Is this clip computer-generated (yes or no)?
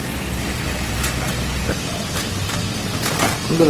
no